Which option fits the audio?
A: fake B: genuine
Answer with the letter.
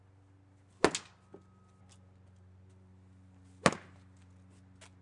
B